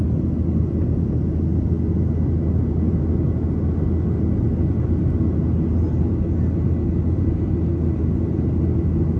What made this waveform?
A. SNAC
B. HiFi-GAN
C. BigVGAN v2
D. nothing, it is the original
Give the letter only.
D